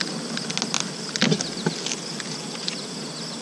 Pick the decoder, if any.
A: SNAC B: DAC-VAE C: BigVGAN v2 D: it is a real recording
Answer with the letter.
D